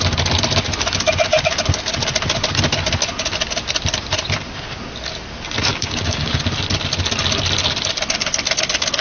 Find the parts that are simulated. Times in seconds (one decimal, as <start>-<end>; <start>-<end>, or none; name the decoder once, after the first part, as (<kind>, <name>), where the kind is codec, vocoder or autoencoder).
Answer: 5.7-6.4 (codec, DAC)